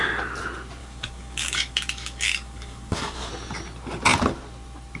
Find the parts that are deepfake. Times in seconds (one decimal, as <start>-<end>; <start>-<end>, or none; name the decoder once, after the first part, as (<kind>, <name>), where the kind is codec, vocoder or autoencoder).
0.8-3.3 (codec, DAC)